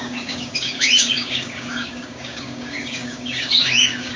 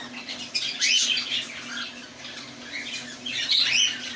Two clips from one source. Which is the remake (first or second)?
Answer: first